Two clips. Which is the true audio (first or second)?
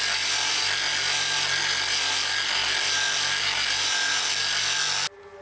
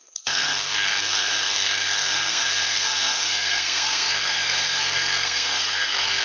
first